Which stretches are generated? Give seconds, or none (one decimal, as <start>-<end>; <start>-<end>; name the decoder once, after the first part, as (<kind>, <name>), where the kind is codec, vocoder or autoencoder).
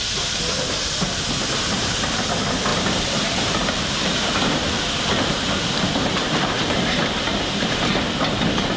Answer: 2.7-7.9 (vocoder, BigVGAN v2)